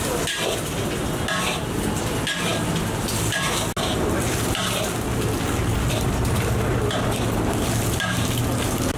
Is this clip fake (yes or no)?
no